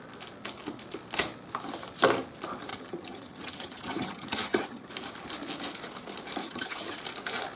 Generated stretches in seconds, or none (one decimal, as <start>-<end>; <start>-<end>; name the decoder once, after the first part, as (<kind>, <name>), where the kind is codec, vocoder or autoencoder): 2.7-4.9 (vocoder, HiFi-GAN); 6.4-7.0